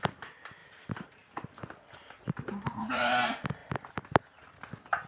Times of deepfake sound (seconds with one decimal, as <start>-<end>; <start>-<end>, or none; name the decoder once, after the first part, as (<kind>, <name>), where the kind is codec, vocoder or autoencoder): 0.6-1.6 (vocoder, BigVGAN v2)